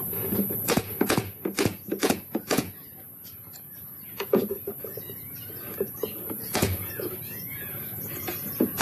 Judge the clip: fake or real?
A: fake